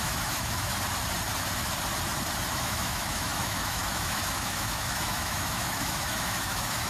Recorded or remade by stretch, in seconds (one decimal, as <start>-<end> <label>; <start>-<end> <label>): 0.0-0.7 remade; 0.7-2.5 recorded; 2.5-6.9 remade